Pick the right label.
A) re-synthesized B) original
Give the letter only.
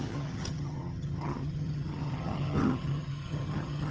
A